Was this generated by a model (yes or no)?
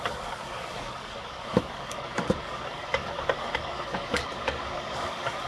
yes